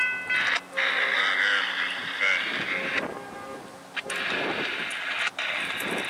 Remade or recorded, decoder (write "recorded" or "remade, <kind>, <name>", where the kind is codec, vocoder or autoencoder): recorded